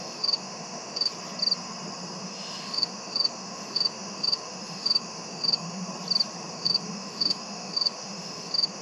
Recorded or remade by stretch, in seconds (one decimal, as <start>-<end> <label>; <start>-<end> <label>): 0.0-1.1 remade; 1.1-2.2 recorded; 2.2-5.9 remade; 5.9-6.5 recorded; 6.5-8.8 remade